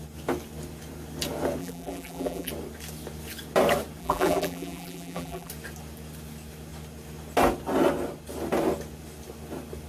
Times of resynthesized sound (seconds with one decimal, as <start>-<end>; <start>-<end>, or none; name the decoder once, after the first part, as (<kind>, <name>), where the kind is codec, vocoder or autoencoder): 1.6-2.5 (vocoder, BigVGAN v2); 4.0-5.5